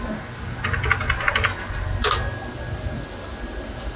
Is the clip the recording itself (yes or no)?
yes